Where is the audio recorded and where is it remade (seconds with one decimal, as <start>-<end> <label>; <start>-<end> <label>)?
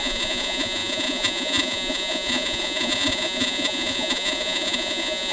0.0-5.3 remade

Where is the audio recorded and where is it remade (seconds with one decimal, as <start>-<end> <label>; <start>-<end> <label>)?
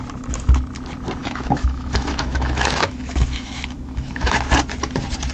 0.0-1.2 recorded; 1.2-4.4 remade; 4.4-5.3 recorded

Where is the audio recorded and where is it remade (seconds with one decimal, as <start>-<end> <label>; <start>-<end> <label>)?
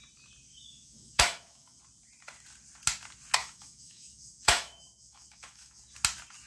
0.0-0.5 recorded; 0.5-1.8 remade; 1.8-3.4 recorded; 3.4-5.8 remade; 5.8-6.5 recorded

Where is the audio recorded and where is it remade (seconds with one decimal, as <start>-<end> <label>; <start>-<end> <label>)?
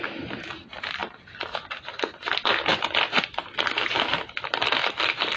0.0-5.4 recorded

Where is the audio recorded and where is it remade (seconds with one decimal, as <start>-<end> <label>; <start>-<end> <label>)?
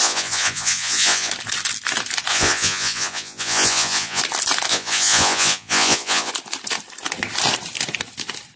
0.0-1.3 remade; 1.3-2.3 recorded; 2.3-4.2 remade; 4.2-4.7 recorded; 4.7-6.3 remade; 6.3-8.6 recorded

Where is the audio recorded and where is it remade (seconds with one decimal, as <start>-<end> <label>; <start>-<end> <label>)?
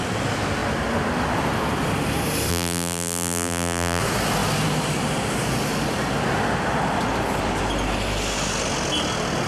0.0-2.5 recorded; 2.5-4.0 remade; 4.0-9.5 recorded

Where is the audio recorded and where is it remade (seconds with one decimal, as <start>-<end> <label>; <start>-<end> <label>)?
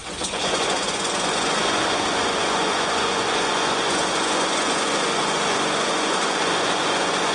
0.0-7.3 remade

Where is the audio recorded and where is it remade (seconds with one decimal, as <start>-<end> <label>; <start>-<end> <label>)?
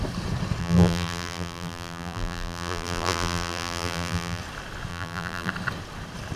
0.0-0.6 recorded; 0.6-4.4 remade; 4.4-4.9 recorded; 4.9-5.5 remade; 5.5-6.4 recorded